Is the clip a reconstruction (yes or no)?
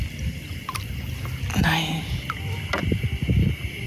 no